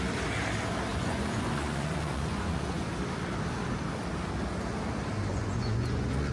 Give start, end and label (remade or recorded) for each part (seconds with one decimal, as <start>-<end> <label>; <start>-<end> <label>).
0.0-0.9 recorded; 0.9-2.9 remade; 2.9-5.3 recorded; 5.3-6.3 remade